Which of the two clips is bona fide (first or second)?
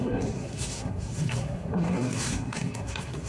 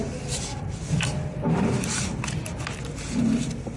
second